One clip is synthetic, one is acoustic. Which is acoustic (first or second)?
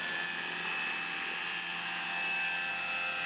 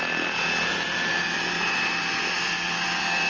first